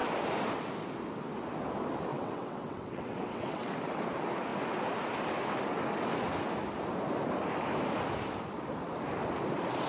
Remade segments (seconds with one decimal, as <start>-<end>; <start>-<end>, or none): 2.1-3.7